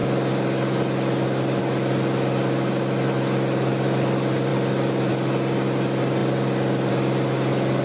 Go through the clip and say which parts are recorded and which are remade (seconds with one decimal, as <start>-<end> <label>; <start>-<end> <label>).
0.0-7.8 recorded